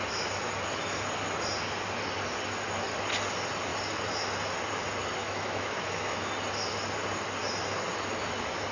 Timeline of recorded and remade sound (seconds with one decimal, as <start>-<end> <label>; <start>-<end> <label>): 0.0-5.2 recorded; 5.2-6.3 remade; 6.3-8.7 recorded